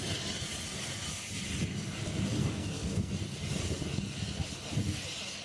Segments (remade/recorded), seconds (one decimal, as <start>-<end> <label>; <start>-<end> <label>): 0.0-2.4 recorded; 2.4-3.1 remade; 3.1-5.4 recorded